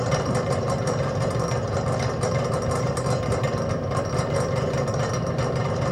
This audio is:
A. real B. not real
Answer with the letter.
B